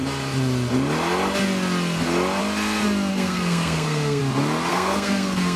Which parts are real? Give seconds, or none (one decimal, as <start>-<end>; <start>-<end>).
0.0-3.1; 4.2-4.7